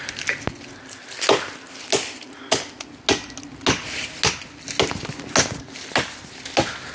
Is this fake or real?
real